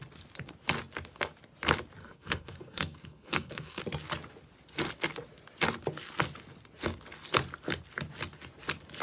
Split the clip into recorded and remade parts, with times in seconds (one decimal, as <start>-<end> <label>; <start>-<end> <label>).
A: 0.0-2.0 recorded; 2.0-3.8 remade; 3.8-9.0 recorded